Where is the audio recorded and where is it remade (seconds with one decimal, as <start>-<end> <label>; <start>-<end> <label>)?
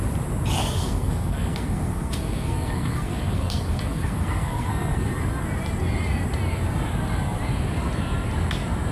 0.0-0.6 recorded; 0.6-5.1 remade; 5.1-8.9 recorded